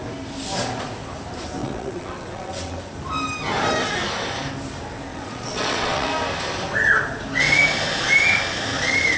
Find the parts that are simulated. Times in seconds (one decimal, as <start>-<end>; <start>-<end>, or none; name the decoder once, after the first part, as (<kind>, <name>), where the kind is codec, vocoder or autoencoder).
1.6-2.8 (vocoder, WaveNeXt); 5.1-6.1